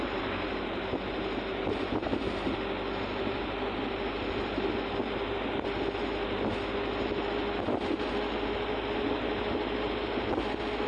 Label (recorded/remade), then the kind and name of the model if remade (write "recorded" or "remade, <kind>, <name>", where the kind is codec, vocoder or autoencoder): recorded